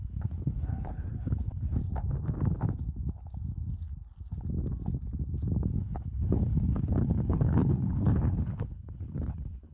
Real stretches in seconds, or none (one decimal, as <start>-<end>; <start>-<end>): 1.8-5.8